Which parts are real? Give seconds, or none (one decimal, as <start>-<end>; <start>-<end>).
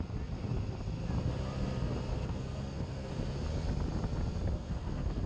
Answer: 0.0-2.1; 3.1-4.5